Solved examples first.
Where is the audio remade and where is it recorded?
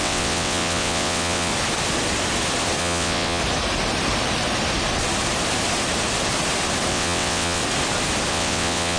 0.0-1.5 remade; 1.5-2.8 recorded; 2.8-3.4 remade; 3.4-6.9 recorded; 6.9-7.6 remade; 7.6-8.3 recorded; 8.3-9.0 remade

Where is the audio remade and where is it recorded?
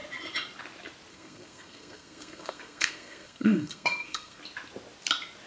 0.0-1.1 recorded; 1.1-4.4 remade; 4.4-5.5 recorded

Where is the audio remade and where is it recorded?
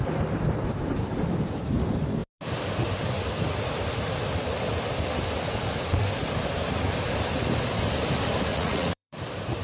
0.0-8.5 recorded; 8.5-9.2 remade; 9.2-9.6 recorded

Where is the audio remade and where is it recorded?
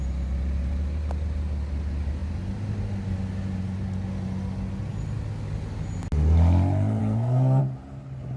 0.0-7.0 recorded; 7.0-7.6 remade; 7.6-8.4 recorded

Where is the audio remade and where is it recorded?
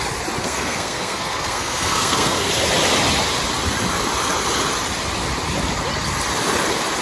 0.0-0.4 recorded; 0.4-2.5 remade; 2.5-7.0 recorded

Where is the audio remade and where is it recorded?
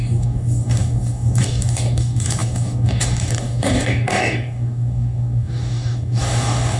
0.0-6.8 remade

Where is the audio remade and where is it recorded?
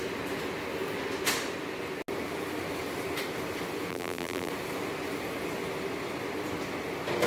0.0-3.9 recorded; 3.9-4.5 remade; 4.5-7.3 recorded